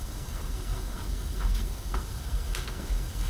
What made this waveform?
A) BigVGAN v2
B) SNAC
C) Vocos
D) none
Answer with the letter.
B